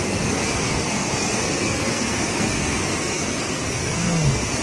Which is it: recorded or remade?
remade